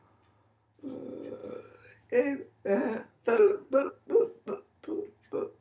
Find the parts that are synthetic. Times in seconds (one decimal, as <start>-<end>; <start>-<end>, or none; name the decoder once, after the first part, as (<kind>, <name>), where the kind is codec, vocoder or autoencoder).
3.0-3.9 (codec, SNAC)